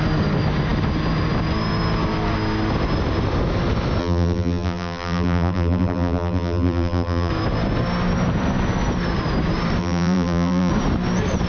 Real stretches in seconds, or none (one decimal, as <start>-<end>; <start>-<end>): 0.0-4.0; 7.3-9.8; 10.7-11.5